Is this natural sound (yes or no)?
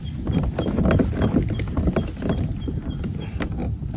yes